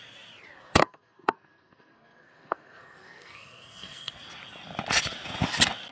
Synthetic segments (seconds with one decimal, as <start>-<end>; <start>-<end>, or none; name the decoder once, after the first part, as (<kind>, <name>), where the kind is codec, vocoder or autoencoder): 0.6-4.1 (codec, SNAC)